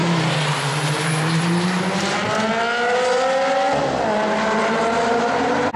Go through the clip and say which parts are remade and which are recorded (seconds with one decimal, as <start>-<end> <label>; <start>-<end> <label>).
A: 0.0-2.5 remade; 2.5-5.8 recorded